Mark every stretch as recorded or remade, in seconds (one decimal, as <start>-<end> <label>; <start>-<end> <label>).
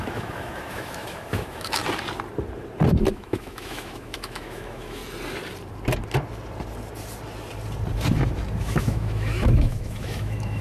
0.0-1.8 remade; 1.8-3.1 recorded; 3.1-5.0 remade; 5.0-8.6 recorded; 8.6-10.6 remade